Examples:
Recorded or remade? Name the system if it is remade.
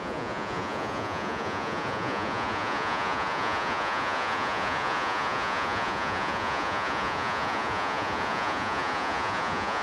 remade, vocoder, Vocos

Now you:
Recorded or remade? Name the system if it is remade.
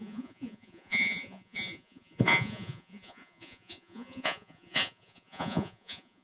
remade, vocoder, Vocos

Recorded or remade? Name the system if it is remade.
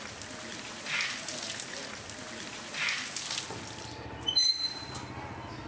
recorded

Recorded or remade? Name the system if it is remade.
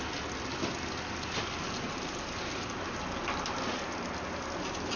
recorded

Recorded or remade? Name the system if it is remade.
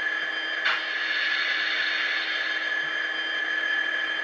recorded